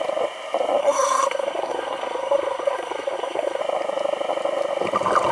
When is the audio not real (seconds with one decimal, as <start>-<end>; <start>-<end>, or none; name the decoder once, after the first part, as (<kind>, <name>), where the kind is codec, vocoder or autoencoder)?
0.8-3.6 (codec, SNAC)